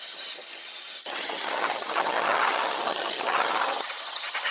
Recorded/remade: remade